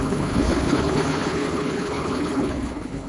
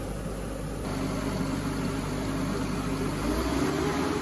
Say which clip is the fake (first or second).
first